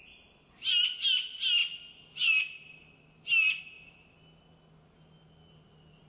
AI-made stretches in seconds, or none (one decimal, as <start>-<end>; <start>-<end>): none